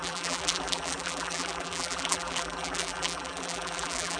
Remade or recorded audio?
remade